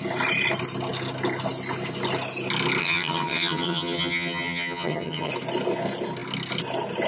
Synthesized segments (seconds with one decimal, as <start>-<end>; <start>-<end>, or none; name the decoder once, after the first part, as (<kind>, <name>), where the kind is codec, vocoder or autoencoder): 2.8-5.3 (vocoder, HiFi-GAN)

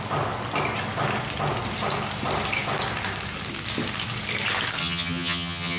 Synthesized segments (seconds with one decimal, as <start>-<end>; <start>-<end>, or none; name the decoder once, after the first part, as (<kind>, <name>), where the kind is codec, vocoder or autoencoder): 4.8-5.8 (vocoder, HiFi-GAN)